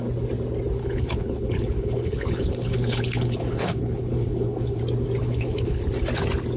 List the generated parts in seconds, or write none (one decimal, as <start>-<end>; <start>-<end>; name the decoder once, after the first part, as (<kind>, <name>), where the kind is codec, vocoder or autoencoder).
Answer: 0.8-4.8 (codec, HILCodec); 5.2-5.8